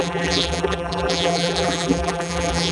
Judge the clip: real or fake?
fake